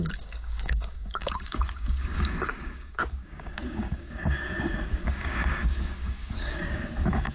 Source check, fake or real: fake